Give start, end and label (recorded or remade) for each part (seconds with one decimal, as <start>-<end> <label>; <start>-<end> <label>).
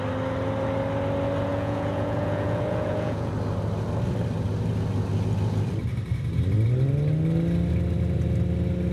0.0-1.5 recorded; 1.5-3.3 remade; 3.3-8.9 recorded